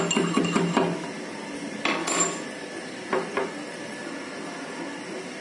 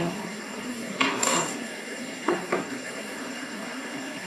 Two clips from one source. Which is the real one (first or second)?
first